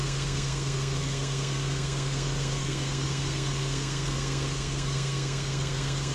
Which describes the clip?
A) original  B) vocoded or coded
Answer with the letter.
B